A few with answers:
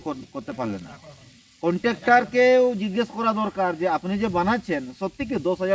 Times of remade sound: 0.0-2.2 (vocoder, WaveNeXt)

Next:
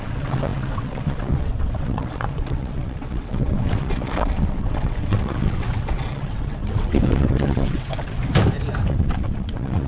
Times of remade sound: 0.0-8.2 (vocoder, WaveNeXt); 8.9-9.9